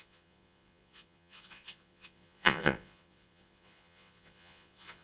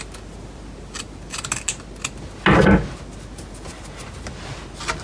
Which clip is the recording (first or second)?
second